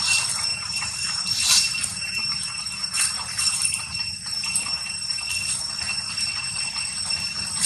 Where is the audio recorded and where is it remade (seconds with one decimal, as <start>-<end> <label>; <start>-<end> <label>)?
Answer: 0.0-0.5 recorded; 0.5-5.1 remade; 5.1-7.7 recorded